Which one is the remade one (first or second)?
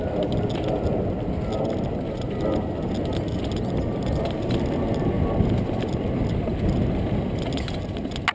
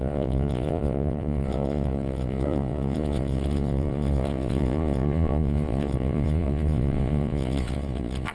second